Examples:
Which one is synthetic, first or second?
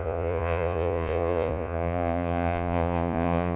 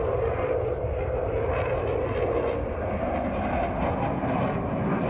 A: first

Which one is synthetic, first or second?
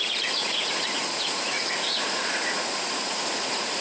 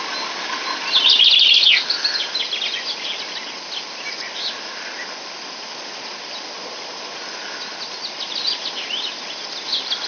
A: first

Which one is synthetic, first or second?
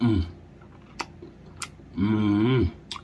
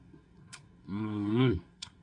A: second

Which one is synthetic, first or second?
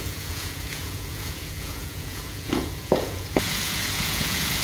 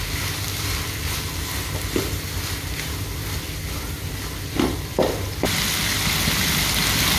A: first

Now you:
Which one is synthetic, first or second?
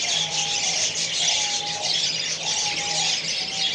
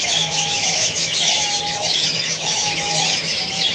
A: second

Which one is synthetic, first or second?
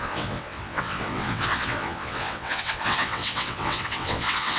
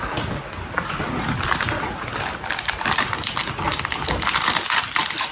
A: first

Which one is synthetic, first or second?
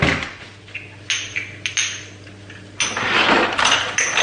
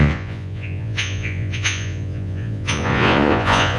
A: second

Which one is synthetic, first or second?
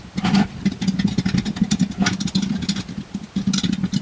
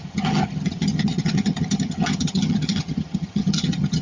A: second